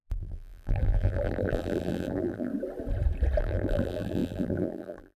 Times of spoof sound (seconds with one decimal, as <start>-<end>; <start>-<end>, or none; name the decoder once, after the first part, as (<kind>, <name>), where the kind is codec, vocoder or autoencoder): 0.0-2.5 (vocoder, BigVGAN v2); 3.4-5.2